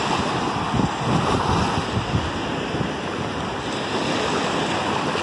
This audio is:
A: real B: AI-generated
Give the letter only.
A